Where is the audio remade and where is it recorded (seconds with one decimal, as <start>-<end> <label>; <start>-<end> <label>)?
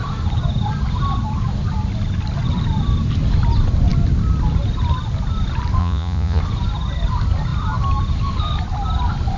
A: 0.0-5.8 recorded; 5.8-6.4 remade; 6.4-9.4 recorded